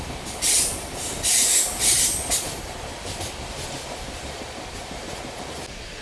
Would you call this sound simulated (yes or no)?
no